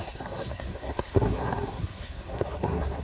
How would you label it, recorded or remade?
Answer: remade